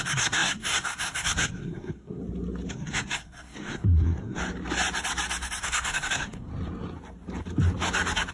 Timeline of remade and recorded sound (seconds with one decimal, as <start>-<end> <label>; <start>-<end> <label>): 0.0-2.2 remade; 2.2-2.7 recorded; 2.7-4.4 remade; 4.4-5.6 recorded; 5.6-6.5 remade; 6.5-8.3 recorded